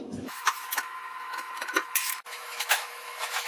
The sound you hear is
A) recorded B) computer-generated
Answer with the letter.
B